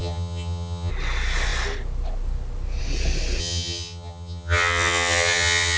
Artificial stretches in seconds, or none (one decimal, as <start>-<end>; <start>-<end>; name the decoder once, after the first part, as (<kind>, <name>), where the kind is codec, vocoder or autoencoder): 0.0-0.9 (vocoder, HiFi-GAN); 3.4-5.8

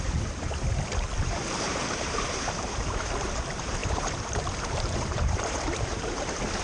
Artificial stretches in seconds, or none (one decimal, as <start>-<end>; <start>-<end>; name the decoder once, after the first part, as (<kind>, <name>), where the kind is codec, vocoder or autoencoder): 0.0-6.6 (vocoder, BigVGAN v2)

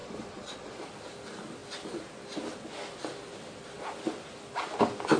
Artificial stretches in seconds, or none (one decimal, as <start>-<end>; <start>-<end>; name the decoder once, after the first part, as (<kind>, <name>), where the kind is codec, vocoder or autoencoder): 0.0-0.8 (vocoder, Vocos)

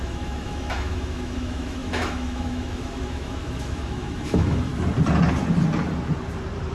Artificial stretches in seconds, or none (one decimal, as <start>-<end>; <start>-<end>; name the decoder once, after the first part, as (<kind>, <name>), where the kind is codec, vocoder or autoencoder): 0.0-4.7 (autoencoder, DAC-VAE)

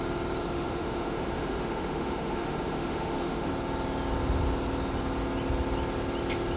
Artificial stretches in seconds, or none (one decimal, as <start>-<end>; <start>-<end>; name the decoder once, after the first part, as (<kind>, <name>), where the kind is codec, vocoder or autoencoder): 0.4-3.5 (autoencoder, DAC-VAE)

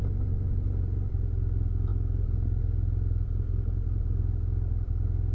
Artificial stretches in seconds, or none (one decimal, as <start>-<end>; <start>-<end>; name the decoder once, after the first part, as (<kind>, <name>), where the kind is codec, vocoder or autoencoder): none

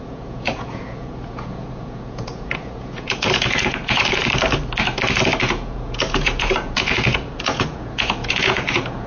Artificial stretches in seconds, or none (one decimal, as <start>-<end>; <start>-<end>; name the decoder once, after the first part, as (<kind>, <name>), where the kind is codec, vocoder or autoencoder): 0.0-4.2 (vocoder, Vocos); 5.4-9.1